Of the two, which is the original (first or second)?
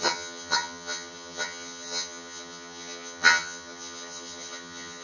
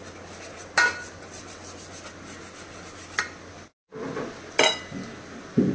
second